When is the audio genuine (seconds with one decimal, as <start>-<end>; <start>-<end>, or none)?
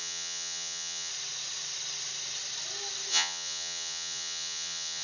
1.1-3.1